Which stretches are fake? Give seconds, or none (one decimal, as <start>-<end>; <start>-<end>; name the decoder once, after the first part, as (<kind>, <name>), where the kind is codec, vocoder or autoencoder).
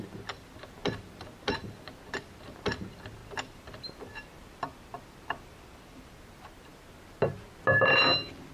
3.2-6.2 (vocoder, BigVGAN v2)